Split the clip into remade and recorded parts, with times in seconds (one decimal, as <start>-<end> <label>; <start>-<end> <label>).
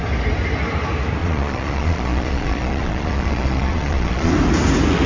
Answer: 0.0-1.2 recorded; 1.2-4.3 remade; 4.3-5.1 recorded